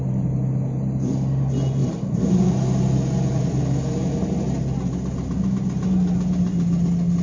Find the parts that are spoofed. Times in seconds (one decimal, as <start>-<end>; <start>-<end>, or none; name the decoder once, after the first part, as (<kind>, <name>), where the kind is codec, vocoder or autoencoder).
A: 1.8-2.4 (vocoder, BigVGAN v2); 3.3-4.1